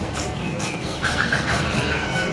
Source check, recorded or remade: remade